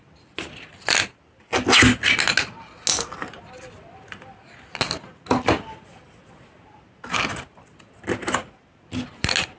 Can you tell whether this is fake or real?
real